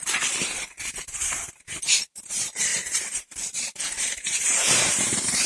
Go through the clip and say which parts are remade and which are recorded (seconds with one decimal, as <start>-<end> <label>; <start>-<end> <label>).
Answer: 0.0-1.2 remade; 1.2-2.0 recorded; 2.0-5.5 remade